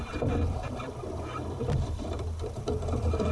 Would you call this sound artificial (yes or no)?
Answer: yes